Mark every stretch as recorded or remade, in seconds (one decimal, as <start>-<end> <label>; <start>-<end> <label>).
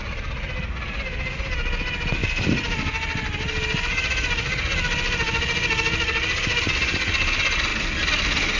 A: 0.0-8.6 recorded